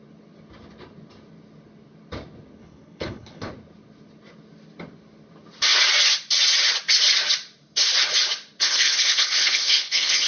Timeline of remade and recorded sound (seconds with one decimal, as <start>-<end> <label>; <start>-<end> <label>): 0.0-2.6 recorded; 2.6-3.5 remade; 3.5-8.6 recorded; 8.6-10.3 remade